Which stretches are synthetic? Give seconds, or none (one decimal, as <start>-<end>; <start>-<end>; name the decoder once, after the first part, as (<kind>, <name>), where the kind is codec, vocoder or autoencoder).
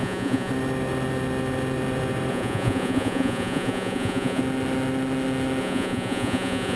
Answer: 0.0-0.5 (vocoder, Vocos); 2.3-4.4; 5.6-6.8